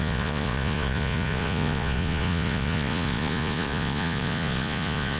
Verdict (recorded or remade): remade